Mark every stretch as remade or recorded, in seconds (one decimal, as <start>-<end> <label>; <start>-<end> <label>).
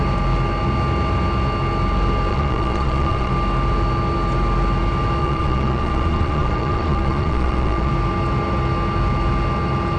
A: 0.0-2.3 recorded; 2.3-3.3 remade; 3.3-5.2 recorded; 5.2-7.9 remade; 7.9-10.0 recorded